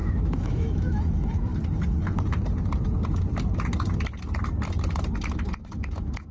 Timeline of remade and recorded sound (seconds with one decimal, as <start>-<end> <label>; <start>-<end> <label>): 0.0-1.5 remade; 1.5-5.2 recorded; 5.2-6.3 remade